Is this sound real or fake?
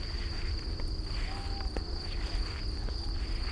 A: real